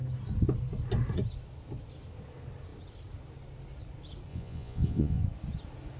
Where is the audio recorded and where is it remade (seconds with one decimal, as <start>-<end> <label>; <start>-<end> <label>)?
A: 0.0-4.3 recorded; 4.3-5.2 remade; 5.2-6.0 recorded